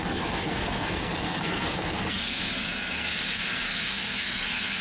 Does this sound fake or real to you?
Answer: fake